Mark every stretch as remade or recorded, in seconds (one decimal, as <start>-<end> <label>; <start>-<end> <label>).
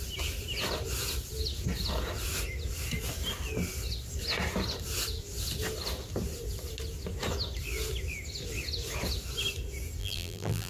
0.0-10.0 recorded; 10.0-10.7 remade